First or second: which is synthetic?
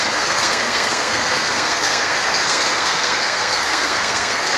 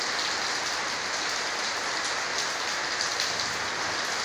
first